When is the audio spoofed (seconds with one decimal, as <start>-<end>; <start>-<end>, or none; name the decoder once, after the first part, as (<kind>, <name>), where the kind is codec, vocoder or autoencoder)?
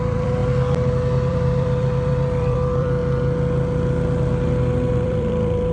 0.0-0.4 (vocoder, BigVGAN v2); 1.3-3.0; 4.9-5.7